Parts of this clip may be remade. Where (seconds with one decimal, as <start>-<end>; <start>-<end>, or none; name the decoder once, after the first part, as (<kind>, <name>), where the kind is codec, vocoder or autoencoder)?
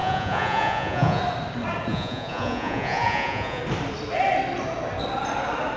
0.0-1.2 (vocoder, Vocos); 1.9-3.6